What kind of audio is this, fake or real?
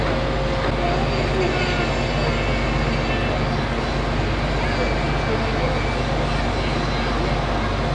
real